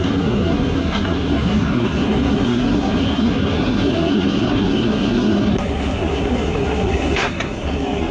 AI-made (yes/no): yes